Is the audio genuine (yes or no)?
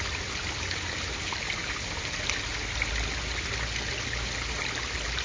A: yes